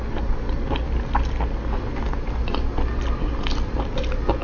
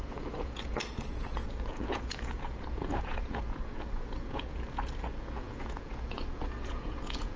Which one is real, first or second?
first